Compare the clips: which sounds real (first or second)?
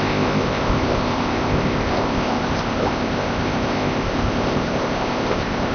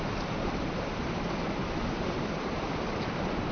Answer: second